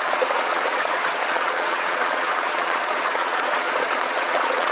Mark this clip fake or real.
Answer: fake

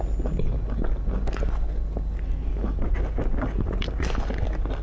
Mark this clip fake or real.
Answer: real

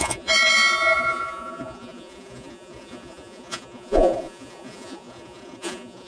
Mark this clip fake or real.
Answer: fake